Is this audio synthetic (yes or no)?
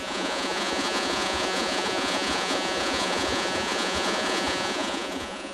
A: yes